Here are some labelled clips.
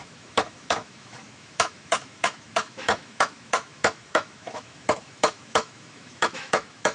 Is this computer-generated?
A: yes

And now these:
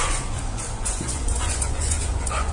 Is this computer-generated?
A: yes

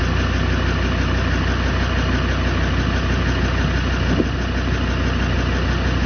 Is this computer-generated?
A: no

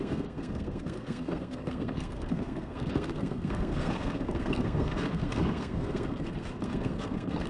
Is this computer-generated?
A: yes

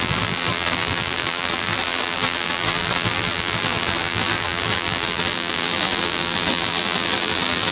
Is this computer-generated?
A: yes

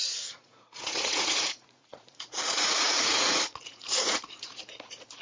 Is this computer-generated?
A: yes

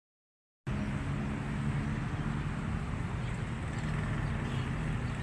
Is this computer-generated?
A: no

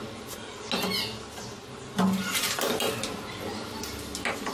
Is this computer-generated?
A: no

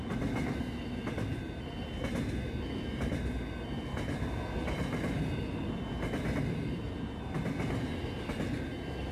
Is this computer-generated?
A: no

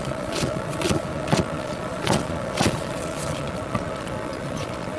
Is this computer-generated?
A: yes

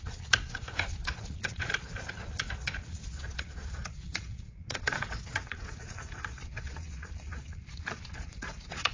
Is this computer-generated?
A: yes